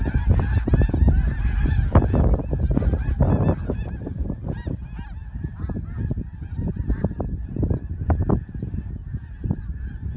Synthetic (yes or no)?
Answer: no